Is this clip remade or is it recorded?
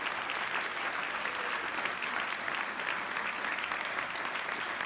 recorded